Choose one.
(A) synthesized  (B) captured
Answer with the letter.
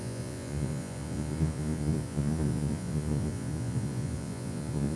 A